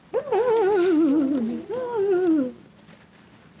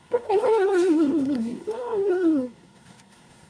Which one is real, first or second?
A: first